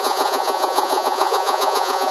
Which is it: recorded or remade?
remade